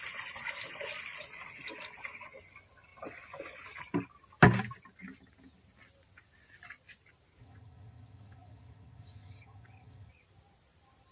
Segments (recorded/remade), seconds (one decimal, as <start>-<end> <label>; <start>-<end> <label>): 0.0-7.4 recorded; 7.4-10.1 remade; 10.1-11.1 recorded